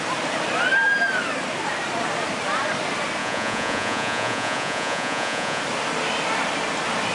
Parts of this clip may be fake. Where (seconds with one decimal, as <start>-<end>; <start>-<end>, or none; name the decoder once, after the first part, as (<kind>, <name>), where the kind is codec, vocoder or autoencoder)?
3.2-5.6 (vocoder, Vocos)